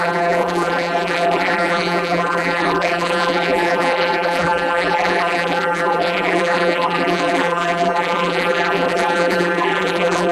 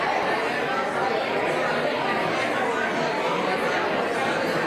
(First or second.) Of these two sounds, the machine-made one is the first